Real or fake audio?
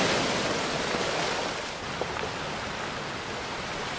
real